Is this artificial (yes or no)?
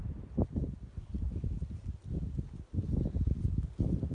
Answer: no